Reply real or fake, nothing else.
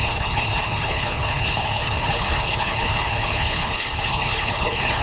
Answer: fake